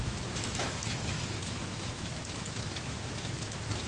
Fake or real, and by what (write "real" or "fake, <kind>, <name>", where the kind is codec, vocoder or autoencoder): fake, autoencoder, DAC-VAE